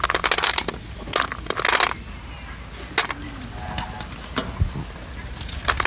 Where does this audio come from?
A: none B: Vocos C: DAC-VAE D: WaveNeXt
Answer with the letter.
A